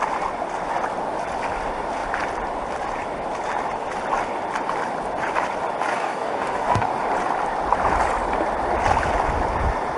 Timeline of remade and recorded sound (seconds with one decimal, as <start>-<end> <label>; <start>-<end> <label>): 0.0-5.9 recorded; 5.9-6.9 remade; 6.9-10.0 recorded